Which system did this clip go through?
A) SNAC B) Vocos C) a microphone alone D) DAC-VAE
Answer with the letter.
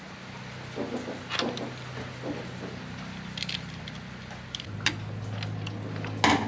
C